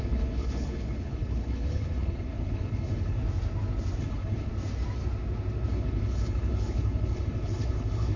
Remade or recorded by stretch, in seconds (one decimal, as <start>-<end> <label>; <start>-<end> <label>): 0.0-3.2 remade; 3.2-4.0 recorded; 4.0-4.5 remade; 4.5-5.7 recorded; 5.7-8.2 remade